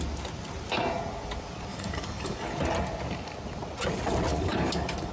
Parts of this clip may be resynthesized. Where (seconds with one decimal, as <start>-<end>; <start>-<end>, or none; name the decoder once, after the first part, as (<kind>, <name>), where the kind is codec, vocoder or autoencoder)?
1.7-2.6 (codec, DAC); 4.3-5.1

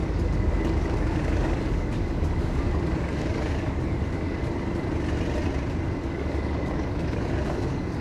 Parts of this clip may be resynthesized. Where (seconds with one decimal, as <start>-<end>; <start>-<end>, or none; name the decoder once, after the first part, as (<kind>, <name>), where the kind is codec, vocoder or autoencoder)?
0.0-4.6 (codec, DAC); 6.0-8.0

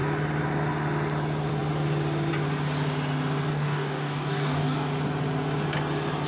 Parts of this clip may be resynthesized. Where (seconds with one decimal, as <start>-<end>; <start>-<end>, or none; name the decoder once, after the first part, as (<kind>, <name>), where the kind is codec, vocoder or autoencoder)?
3.5-4.9 (codec, DAC)

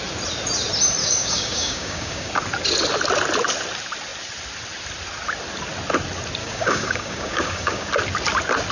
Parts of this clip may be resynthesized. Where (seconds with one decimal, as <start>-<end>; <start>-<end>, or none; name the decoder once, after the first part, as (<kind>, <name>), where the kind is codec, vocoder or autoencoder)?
1.0-2.3 (codec, DAC); 6.4-7.9

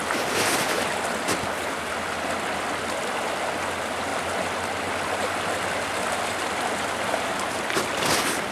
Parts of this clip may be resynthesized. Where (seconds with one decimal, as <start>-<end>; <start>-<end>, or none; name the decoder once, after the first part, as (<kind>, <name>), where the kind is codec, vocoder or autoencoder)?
none

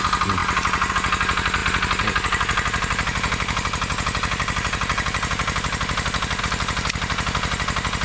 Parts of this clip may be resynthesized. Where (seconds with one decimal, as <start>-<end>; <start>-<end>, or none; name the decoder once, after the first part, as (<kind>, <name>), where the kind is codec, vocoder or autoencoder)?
none

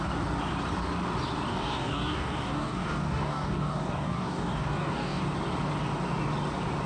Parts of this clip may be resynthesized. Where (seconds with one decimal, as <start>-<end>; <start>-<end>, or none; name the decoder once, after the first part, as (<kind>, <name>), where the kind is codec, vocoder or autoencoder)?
1.5-5.2 (codec, DAC)

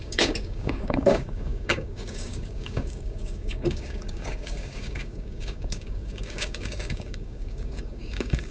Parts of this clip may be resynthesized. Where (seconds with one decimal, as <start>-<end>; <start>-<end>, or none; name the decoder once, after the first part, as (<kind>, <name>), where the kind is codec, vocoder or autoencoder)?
0.0-8.5 (codec, DAC)